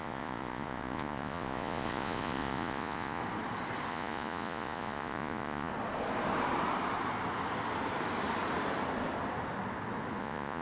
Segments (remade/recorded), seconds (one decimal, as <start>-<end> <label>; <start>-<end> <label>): 0.0-3.2 remade; 3.2-3.9 recorded; 3.9-5.7 remade; 5.7-10.2 recorded; 10.2-10.6 remade